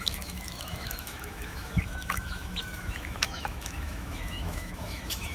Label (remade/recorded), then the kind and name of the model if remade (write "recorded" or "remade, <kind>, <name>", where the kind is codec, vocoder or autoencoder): remade, autoencoder, DAC-VAE